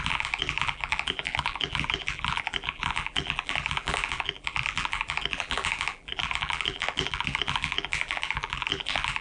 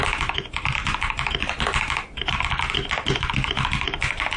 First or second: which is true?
second